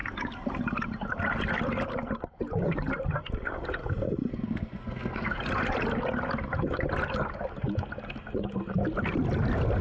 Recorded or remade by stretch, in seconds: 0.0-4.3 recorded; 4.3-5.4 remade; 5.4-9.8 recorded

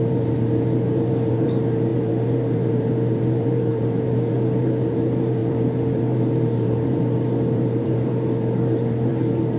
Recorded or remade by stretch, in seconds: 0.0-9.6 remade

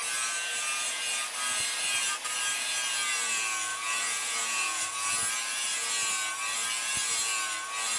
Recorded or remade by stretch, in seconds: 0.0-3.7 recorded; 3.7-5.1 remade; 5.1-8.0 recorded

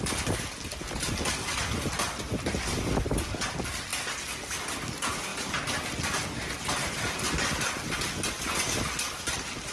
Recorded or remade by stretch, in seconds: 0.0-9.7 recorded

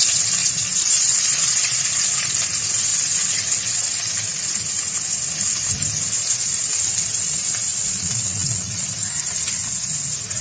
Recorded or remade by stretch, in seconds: 0.0-0.4 recorded; 0.4-2.3 remade; 2.3-7.7 recorded; 7.7-8.9 remade; 8.9-10.4 recorded

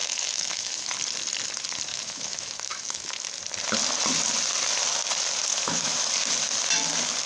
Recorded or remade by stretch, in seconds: 0.0-0.9 remade; 0.9-1.9 recorded; 1.9-3.4 remade; 3.4-5.5 recorded; 5.5-6.1 remade; 6.1-7.3 recorded